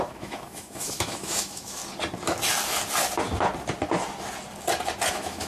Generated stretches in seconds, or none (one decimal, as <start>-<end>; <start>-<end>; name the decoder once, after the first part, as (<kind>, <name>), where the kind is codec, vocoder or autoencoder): 0.0-1.8 (autoencoder, DAC-VAE); 5.1-5.5